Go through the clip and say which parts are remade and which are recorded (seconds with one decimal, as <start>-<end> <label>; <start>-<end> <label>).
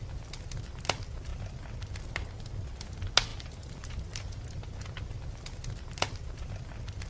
0.0-7.1 recorded